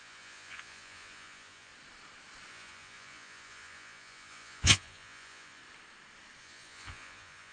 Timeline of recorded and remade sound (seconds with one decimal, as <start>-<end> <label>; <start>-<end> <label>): 0.0-1.7 remade; 1.7-2.5 recorded; 2.5-5.6 remade; 5.6-6.4 recorded; 6.4-7.5 remade